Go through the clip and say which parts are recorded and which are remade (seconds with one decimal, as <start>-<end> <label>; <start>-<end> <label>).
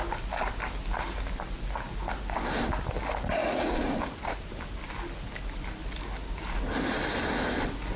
0.0-3.4 recorded; 3.4-4.5 remade; 4.5-8.0 recorded